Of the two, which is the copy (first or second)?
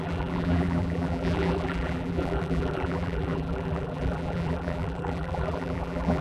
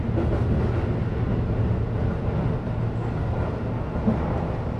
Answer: first